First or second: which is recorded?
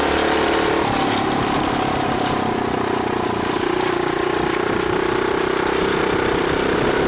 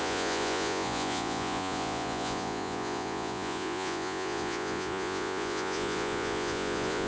first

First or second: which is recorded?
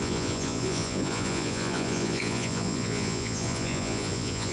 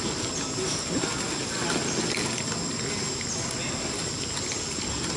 second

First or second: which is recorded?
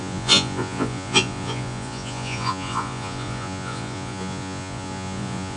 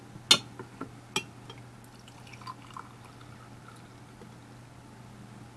second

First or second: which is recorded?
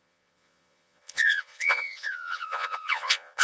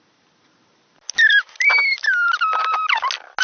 second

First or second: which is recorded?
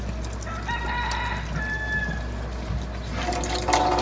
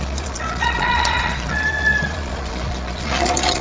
first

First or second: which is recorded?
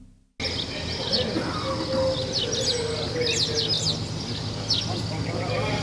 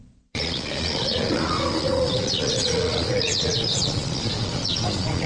first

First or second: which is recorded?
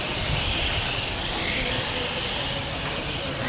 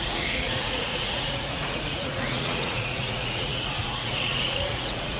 first